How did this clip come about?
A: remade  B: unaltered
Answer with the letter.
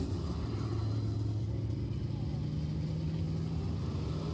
B